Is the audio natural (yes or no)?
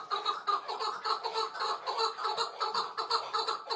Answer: yes